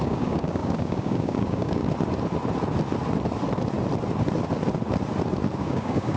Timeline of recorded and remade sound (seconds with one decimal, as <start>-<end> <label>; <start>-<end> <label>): 0.0-1.8 remade; 1.8-5.5 recorded; 5.5-6.2 remade